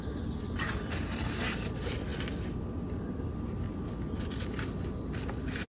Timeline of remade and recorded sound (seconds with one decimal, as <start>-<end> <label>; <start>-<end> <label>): 0.0-5.7 recorded